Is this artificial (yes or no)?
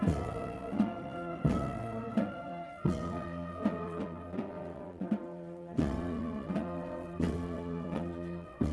yes